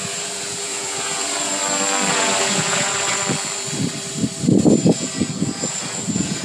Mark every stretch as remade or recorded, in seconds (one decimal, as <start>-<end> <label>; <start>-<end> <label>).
0.0-1.6 remade; 1.6-2.1 recorded; 2.1-3.2 remade; 3.2-5.0 recorded; 5.0-6.4 remade